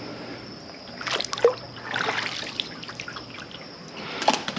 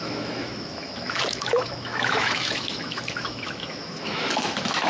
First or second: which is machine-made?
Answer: second